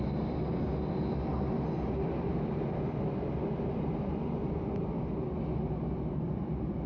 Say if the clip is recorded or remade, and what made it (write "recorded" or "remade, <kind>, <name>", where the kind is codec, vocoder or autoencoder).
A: recorded